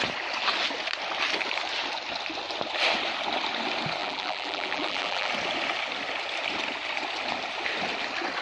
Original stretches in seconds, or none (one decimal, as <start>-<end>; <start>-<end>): 0.0-4.0; 5.3-8.4